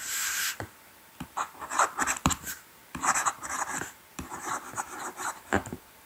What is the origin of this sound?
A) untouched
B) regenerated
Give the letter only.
B